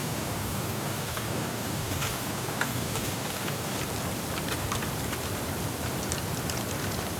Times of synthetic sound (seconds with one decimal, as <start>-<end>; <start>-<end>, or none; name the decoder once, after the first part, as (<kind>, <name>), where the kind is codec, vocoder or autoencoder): 0.0-3.8 (codec, DAC)